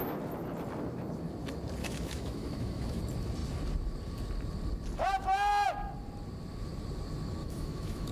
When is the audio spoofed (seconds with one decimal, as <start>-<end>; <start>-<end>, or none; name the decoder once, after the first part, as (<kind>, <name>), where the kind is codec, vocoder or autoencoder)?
1.8-3.0 (autoencoder, DAC-VAE); 7.4-8.1